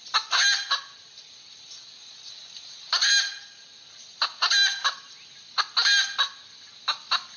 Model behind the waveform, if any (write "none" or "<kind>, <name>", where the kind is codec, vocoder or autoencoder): none